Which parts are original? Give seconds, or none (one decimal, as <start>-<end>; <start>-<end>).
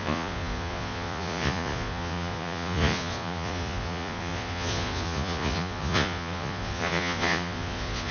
none